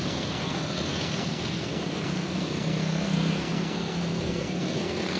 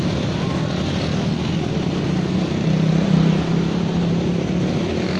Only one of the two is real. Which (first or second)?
second